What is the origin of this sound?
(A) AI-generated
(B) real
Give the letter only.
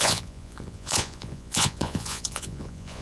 A